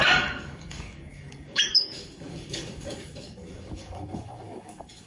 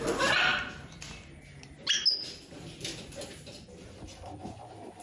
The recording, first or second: second